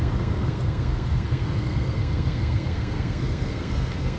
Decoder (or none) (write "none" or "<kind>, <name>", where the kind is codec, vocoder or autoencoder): codec, SNAC